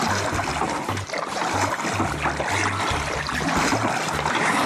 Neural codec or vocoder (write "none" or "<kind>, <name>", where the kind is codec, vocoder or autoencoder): none